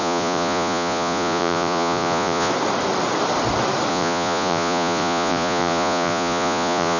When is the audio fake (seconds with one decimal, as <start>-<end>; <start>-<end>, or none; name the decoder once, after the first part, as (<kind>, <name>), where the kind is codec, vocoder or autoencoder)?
0.0-2.5 (vocoder, Vocos); 3.9-7.0